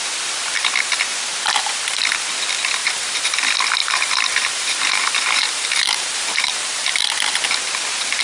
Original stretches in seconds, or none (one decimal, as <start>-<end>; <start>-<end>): 0.0-2.8; 3.4-3.8; 7.0-8.2